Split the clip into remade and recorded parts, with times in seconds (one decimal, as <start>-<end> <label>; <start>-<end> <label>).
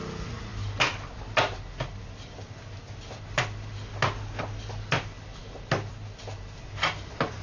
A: 0.0-7.4 recorded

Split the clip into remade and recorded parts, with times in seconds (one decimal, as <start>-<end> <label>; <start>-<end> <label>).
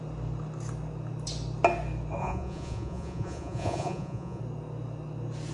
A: 0.0-2.2 recorded; 2.2-4.4 remade; 4.4-5.5 recorded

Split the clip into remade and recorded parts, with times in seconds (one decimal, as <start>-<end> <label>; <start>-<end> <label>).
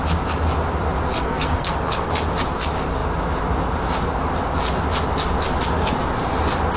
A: 0.0-1.2 recorded; 1.2-2.2 remade; 2.2-6.8 recorded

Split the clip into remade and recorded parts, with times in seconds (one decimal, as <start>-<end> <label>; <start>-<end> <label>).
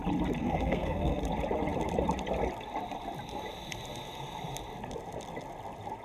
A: 0.0-0.4 recorded; 0.4-1.2 remade; 1.2-6.0 recorded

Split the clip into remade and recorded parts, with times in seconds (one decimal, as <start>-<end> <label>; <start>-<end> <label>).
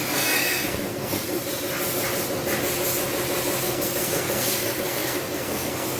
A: 0.0-1.4 remade; 1.4-3.6 recorded; 3.6-6.0 remade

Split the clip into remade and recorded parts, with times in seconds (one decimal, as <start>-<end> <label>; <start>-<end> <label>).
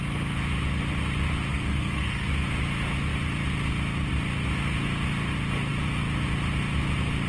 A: 0.0-1.5 recorded; 1.5-2.3 remade; 2.3-7.3 recorded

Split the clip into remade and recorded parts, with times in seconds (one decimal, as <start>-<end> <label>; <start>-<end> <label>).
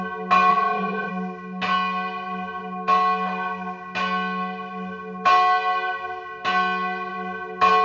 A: 0.0-0.5 recorded; 0.5-1.1 remade; 1.1-7.8 recorded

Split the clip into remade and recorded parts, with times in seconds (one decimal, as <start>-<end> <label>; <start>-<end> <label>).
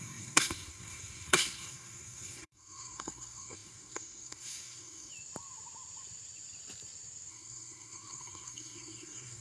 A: 0.0-5.1 remade; 5.1-7.3 recorded; 7.3-9.4 remade